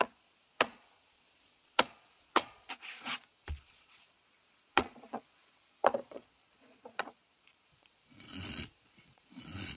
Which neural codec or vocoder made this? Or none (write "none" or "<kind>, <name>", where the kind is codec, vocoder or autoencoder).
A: vocoder, Vocos